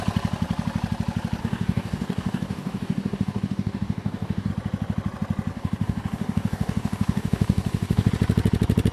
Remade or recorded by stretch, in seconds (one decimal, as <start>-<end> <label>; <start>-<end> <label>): 0.0-1.4 recorded; 1.4-4.5 remade; 4.5-5.5 recorded; 5.5-8.1 remade; 8.1-8.9 recorded